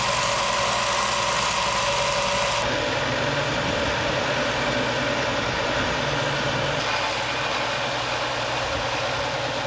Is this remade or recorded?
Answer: recorded